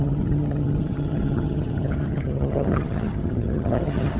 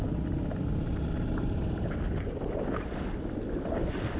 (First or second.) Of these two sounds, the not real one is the first